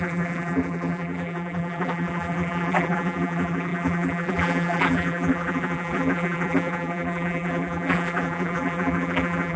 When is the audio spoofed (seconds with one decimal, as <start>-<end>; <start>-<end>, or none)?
0.0-9.6